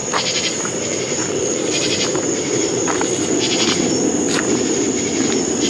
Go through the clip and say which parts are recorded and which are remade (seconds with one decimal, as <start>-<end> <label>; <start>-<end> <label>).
0.0-3.4 remade; 3.4-5.7 recorded